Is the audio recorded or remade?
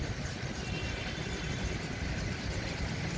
recorded